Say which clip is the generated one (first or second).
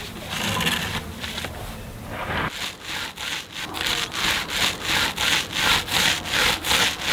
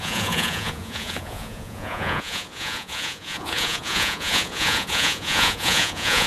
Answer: second